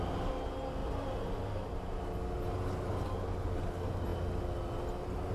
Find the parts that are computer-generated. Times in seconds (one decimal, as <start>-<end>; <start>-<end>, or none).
0.8-2.0